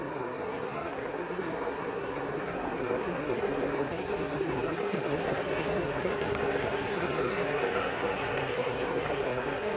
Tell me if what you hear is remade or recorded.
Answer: remade